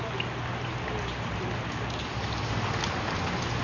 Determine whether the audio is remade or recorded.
recorded